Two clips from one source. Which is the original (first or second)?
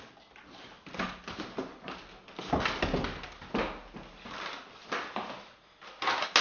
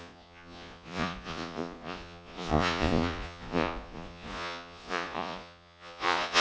first